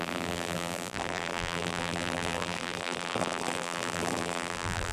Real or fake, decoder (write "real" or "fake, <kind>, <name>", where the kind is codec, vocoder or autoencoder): fake, vocoder, BigVGAN v2